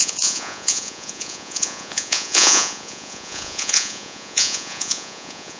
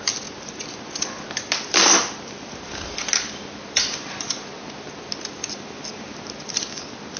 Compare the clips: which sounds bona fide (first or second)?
second